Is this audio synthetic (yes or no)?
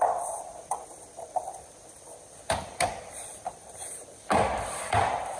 yes